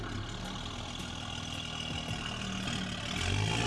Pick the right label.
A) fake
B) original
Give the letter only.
B